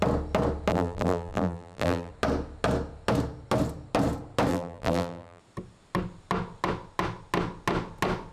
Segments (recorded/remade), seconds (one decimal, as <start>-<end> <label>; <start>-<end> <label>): 0.0-0.7 recorded; 0.7-2.1 remade; 2.1-4.5 recorded; 4.5-5.4 remade; 5.4-8.3 recorded